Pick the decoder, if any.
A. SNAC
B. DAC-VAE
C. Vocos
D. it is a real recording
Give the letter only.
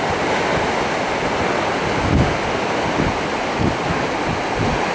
D